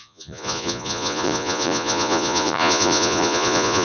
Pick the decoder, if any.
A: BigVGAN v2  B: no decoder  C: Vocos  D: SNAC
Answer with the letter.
C